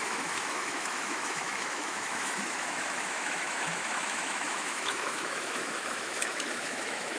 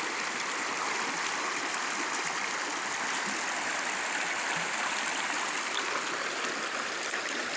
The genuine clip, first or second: second